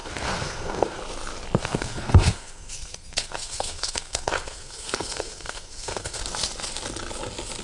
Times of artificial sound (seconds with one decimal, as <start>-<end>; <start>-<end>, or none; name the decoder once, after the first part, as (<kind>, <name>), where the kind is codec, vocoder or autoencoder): 0.0-1.0 (codec, SNAC); 1.6-6.2